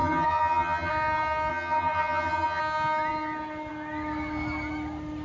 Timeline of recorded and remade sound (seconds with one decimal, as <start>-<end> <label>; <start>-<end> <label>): 0.0-0.9 remade; 0.9-1.5 recorded; 1.5-2.6 remade; 2.6-5.2 recorded